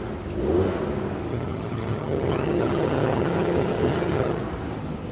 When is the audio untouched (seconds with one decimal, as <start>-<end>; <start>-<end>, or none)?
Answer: 0.0-1.3; 4.4-5.1